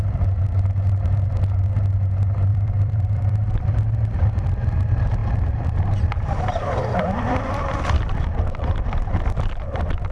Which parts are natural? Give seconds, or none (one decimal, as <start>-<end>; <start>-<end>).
0.0-2.5; 3.3-5.2; 7.6-10.1